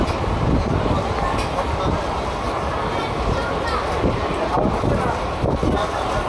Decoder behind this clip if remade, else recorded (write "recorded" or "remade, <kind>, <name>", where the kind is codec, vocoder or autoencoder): recorded